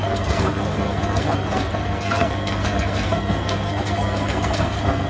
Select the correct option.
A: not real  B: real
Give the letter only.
A